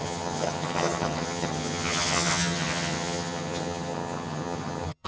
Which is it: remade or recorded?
remade